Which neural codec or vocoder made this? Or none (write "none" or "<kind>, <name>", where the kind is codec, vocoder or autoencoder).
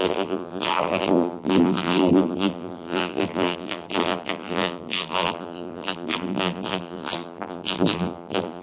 vocoder, BigVGAN v2